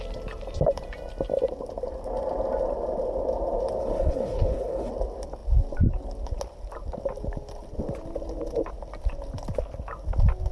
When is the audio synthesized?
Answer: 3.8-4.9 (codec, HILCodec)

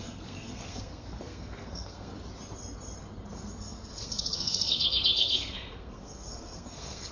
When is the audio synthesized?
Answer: 0.0-2.1 (codec, SNAC); 3.3-7.1

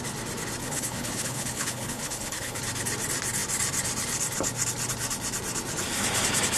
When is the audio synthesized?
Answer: 0.6-2.6 (codec, HILCodec)

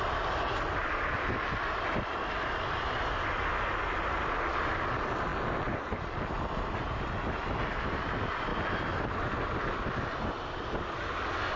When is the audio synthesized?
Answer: none

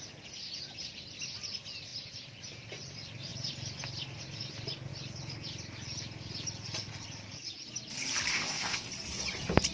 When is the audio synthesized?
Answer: 8.3-8.9 (codec, ZipCodec)

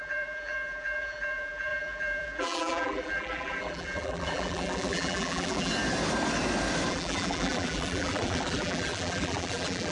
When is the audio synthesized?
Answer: 0.0-5.7 (vocoder, BigVGAN v2); 6.9-9.9